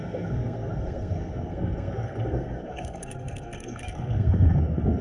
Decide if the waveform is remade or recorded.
remade